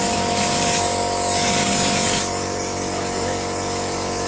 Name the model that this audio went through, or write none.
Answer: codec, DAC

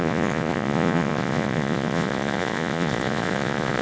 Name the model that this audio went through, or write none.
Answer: vocoder, Vocos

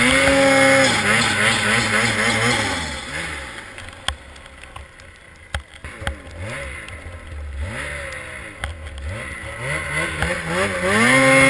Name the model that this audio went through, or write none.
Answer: none